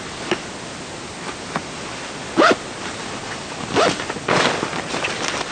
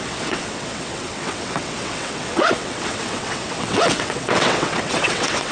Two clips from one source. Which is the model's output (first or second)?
second